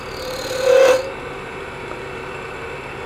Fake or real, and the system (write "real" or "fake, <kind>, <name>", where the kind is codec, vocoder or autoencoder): real